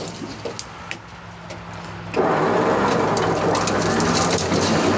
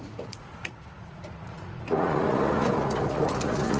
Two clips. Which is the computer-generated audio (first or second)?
second